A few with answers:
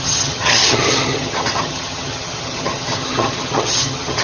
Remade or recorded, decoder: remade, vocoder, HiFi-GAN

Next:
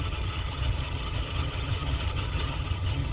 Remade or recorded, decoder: remade, vocoder, HiFi-GAN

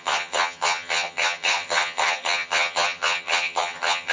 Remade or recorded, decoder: remade, vocoder, HiFi-GAN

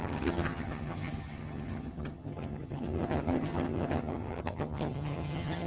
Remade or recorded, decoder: remade, vocoder, HiFi-GAN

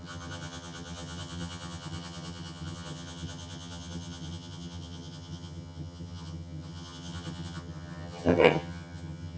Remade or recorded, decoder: remade, vocoder, HiFi-GAN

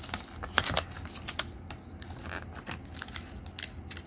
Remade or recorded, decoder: recorded